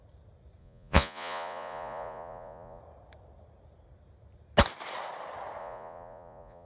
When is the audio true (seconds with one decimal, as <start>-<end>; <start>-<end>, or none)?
0.0-0.6; 2.8-5.6